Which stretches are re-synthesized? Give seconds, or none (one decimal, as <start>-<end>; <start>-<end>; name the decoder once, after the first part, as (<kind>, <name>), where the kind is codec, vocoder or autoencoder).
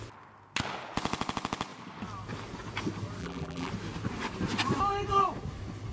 3.2-3.7 (vocoder, BigVGAN v2)